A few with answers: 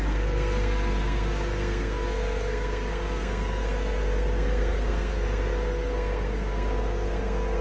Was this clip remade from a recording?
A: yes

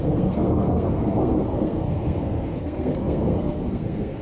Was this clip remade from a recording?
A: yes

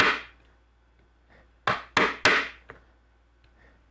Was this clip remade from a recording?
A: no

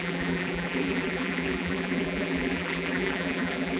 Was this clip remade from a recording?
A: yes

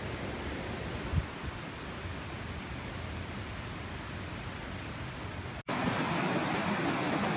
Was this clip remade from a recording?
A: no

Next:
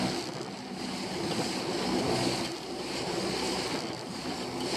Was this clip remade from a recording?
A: no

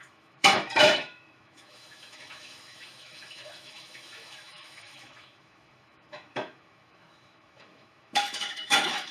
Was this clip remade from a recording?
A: yes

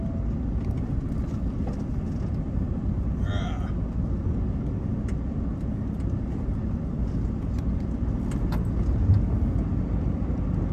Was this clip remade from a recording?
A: no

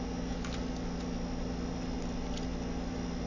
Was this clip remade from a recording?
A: no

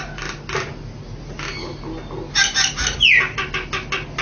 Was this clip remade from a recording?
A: no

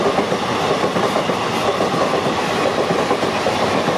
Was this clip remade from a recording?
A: no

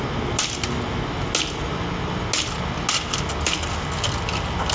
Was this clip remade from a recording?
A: no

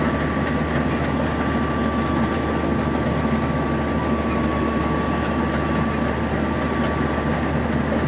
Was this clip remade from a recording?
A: no